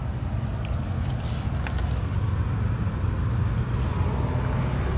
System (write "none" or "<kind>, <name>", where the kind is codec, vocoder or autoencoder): none